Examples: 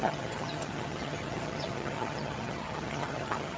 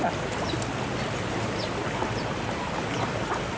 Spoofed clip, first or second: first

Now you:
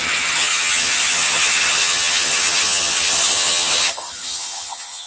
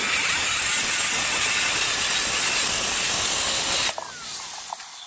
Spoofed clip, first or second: first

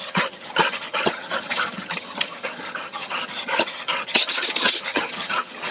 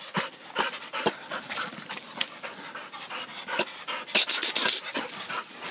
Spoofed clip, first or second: first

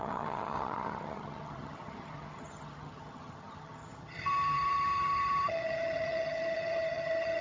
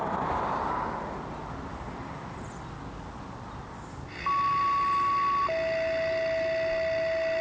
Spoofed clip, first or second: first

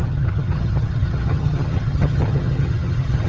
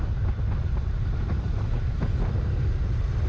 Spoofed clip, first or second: first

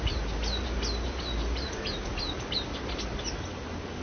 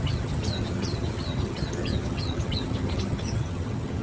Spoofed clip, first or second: second